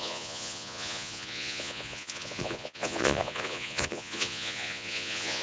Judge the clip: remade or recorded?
remade